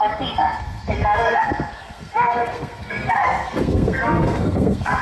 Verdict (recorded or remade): remade